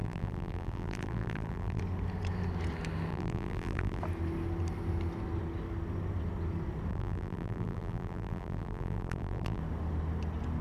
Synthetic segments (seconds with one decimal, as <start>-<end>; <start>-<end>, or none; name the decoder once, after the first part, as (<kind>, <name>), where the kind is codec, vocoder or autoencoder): 0.0-1.8 (vocoder, BigVGAN v2); 3.1-4.0; 6.9-9.6